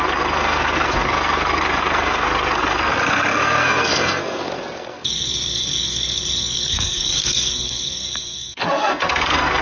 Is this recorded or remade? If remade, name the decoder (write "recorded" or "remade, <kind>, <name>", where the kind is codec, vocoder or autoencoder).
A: remade, codec, SNAC